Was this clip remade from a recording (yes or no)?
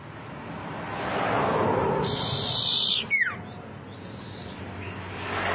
no